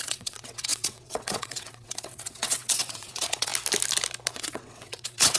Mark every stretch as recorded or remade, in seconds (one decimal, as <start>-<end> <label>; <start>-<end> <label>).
0.0-3.5 remade; 3.5-4.3 recorded; 4.3-5.4 remade